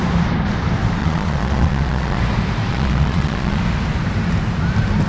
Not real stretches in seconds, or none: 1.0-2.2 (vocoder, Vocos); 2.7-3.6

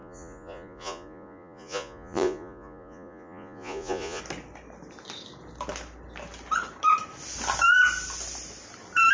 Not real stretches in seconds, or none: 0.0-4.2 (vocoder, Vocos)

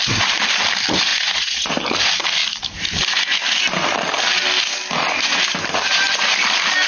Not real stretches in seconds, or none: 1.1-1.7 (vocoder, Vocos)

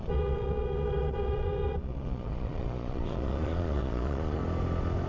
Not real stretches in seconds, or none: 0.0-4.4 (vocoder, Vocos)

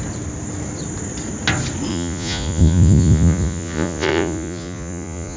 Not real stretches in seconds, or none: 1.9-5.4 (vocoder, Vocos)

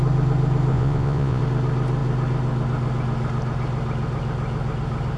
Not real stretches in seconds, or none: 0.7-1.4 (vocoder, Vocos)